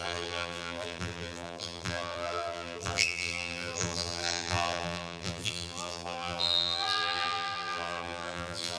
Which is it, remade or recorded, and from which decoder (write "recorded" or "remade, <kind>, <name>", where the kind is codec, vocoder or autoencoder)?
remade, vocoder, BigVGAN v2